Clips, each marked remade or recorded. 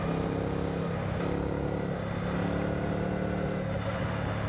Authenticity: recorded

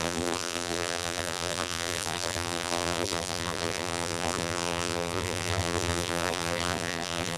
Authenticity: remade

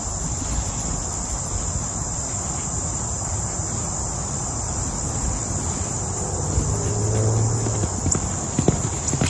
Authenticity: recorded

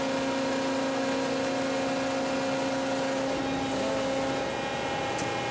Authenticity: recorded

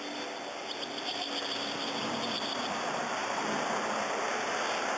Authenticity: recorded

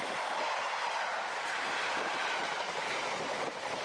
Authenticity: recorded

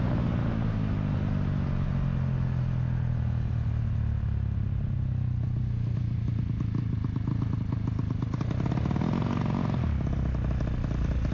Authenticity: recorded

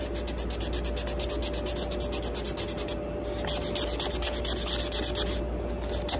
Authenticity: recorded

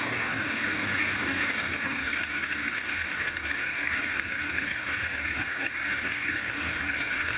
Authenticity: remade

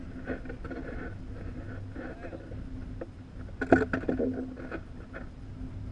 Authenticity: recorded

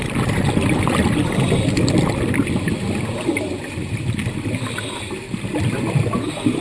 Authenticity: recorded